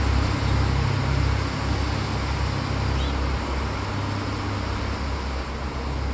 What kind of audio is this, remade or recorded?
recorded